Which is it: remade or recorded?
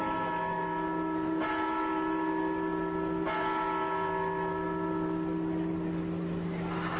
recorded